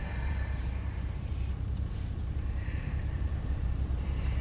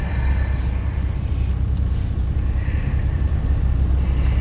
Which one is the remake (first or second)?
first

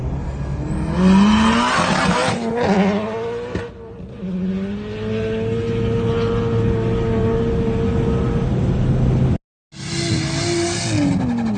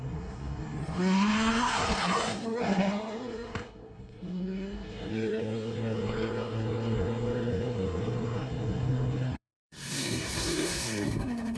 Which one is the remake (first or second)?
second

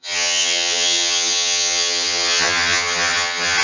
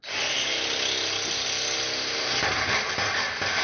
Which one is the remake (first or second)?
first